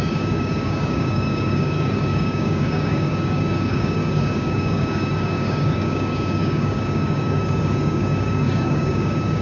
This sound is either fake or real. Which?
fake